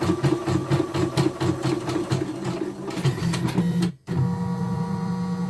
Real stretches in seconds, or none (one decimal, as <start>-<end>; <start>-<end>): 0.0-4.6; 5.1-5.5